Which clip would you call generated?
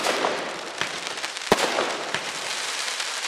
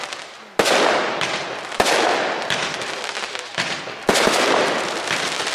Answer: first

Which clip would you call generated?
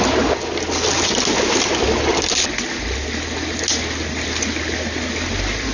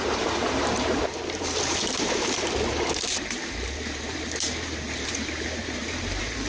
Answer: second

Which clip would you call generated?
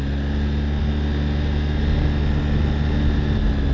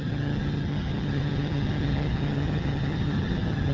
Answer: second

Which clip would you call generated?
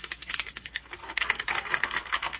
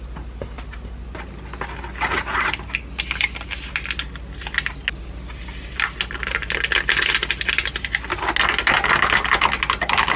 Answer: first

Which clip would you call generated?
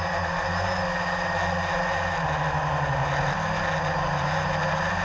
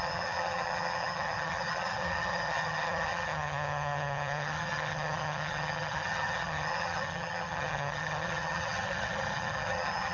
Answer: second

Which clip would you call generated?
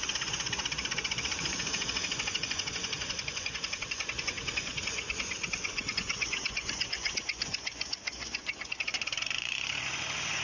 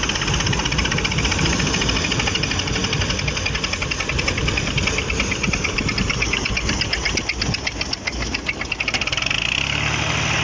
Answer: first